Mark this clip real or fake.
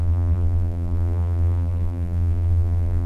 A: fake